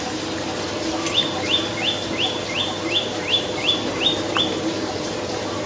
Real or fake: fake